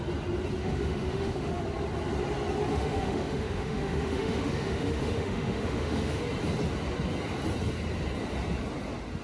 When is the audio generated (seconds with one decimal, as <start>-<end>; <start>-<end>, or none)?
0.6-1.6; 2.7-6.2